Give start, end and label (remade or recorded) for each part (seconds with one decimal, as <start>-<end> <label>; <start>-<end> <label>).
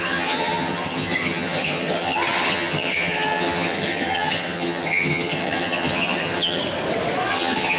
0.0-6.6 remade; 6.6-7.3 recorded; 7.3-7.8 remade